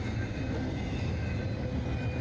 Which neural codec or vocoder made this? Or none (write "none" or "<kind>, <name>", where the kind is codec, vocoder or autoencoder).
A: none